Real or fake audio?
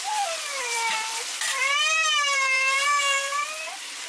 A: fake